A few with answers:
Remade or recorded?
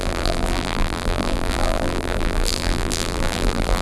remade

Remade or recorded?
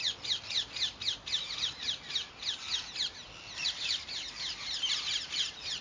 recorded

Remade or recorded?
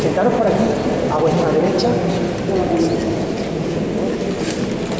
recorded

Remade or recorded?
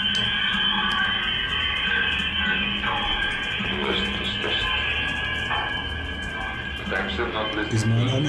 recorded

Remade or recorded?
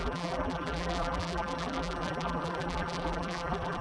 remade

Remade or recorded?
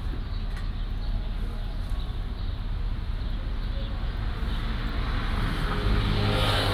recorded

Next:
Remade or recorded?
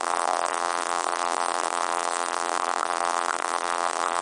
remade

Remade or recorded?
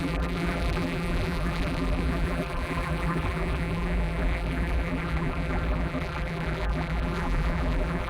remade